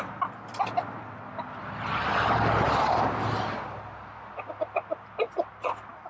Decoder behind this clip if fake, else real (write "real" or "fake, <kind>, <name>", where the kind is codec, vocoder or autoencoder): real